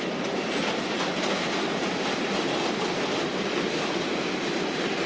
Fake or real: real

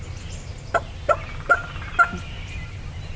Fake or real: real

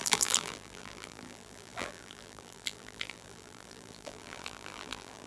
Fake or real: fake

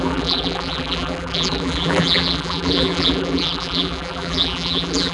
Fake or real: fake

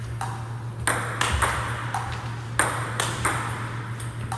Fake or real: real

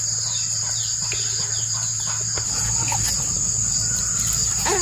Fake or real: real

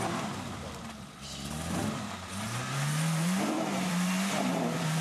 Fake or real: fake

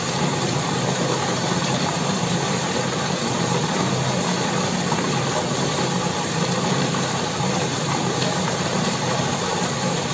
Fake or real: fake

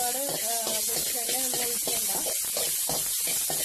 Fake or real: real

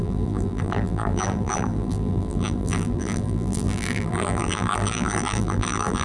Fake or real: fake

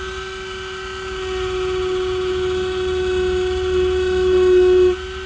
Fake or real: real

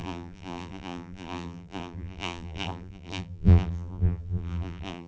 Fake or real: fake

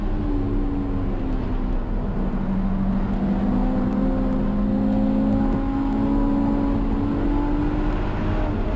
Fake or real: real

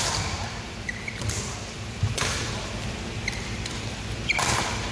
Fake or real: fake